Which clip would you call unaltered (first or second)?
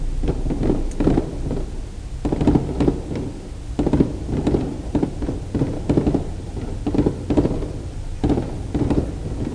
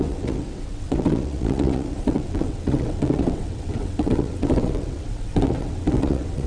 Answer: first